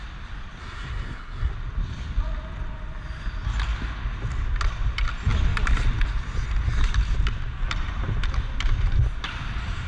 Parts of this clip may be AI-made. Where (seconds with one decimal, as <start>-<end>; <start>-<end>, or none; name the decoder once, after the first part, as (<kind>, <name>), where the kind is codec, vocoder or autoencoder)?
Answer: 0.6-1.5 (codec, SNAC)